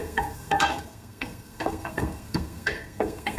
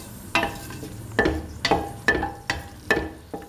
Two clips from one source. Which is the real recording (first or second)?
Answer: second